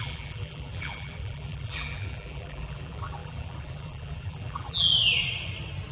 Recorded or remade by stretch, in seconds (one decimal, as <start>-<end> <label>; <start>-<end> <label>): 0.0-4.9 remade; 4.9-5.9 recorded